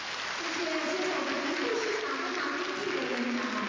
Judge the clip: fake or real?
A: real